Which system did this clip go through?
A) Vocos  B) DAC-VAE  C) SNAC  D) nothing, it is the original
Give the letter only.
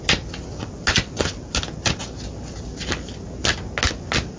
D